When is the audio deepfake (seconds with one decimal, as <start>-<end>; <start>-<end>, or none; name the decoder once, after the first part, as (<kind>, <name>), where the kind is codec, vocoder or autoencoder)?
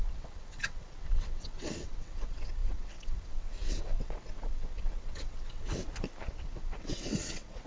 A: 0.0-5.8 (vocoder, WaveNeXt); 6.3-7.7